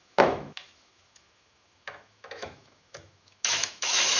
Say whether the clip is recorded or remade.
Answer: remade